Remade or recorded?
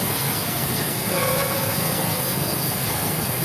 remade